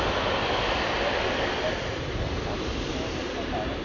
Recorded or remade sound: recorded